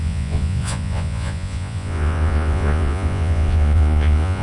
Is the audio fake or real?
fake